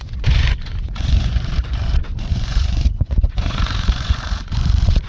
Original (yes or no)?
no